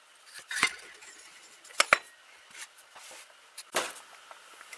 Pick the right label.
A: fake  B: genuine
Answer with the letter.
B